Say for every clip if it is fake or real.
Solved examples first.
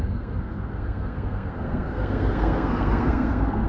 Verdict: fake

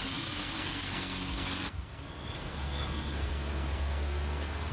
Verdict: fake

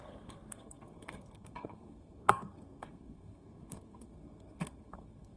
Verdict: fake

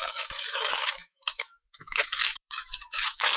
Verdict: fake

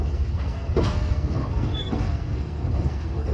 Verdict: fake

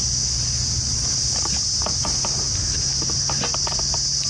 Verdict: real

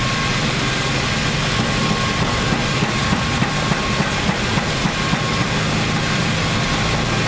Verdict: real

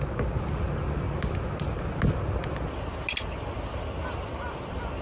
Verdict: real